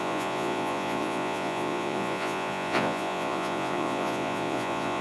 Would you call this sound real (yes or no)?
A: no